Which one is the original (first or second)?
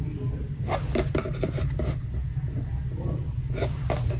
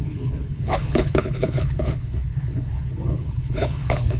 first